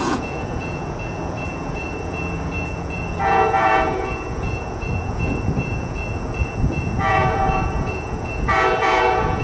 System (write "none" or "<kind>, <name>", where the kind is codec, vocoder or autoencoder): vocoder, Vocos